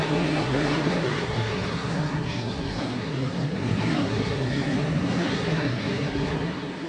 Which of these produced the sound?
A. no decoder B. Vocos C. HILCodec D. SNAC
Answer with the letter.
D